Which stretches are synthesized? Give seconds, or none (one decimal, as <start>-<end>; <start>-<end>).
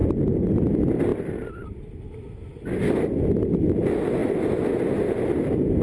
0.0-0.5